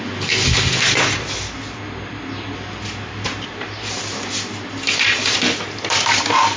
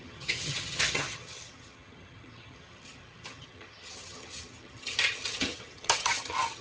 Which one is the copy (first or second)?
second